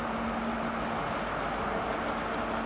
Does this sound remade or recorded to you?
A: recorded